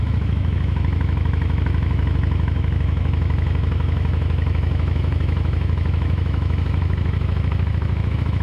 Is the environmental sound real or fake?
fake